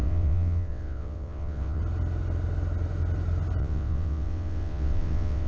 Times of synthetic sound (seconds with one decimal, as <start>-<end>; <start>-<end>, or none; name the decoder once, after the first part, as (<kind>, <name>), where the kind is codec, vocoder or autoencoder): 0.0-1.8 (vocoder, WaveNeXt); 3.6-5.5